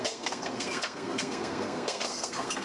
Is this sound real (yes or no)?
no